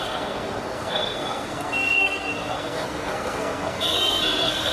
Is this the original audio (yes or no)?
no